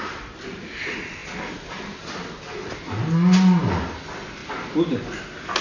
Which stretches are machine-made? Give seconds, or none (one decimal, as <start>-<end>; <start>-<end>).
none